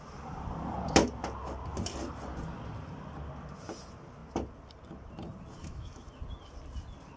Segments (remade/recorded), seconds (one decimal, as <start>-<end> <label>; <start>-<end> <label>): 0.0-5.6 recorded; 5.6-6.1 remade; 6.1-7.2 recorded